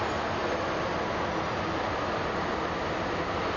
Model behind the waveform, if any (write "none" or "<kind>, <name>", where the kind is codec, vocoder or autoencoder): none